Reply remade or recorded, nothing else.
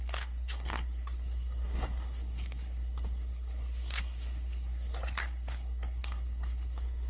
remade